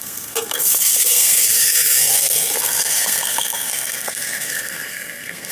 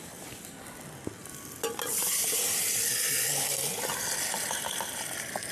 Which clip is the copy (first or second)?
first